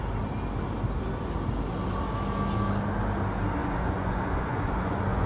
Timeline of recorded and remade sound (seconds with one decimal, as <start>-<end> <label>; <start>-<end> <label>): 0.0-3.6 recorded; 3.6-5.3 remade